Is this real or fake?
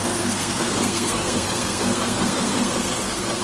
fake